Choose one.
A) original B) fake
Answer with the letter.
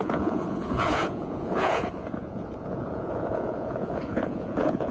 B